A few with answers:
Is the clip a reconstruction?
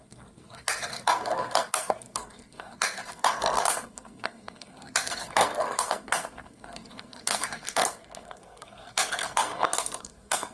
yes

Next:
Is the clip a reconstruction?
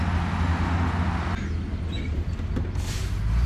no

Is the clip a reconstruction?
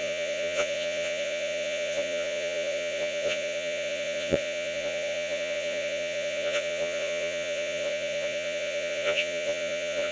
yes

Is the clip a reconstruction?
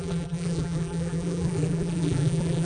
yes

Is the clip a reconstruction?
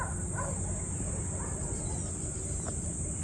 no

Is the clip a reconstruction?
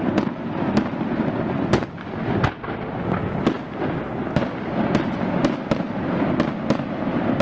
no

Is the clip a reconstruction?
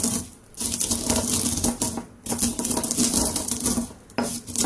no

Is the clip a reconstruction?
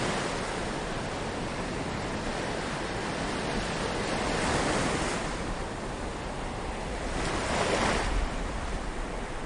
no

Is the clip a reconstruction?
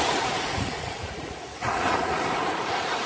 yes